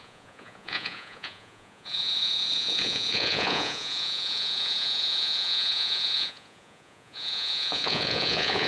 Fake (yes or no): yes